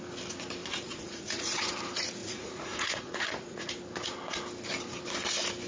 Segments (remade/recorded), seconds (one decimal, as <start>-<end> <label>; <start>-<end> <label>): 0.0-0.6 recorded; 0.6-1.7 remade; 1.7-2.2 recorded; 2.2-3.7 remade; 3.7-5.7 recorded